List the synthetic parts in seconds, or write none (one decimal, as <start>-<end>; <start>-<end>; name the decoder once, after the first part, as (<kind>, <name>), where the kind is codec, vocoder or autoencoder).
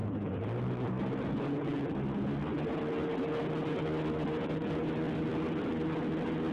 none